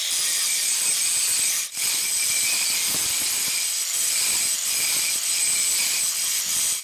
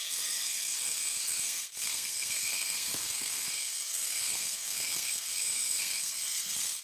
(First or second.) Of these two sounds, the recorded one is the first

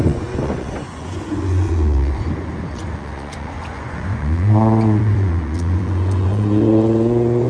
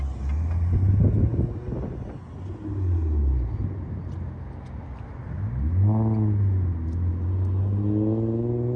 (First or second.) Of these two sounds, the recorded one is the second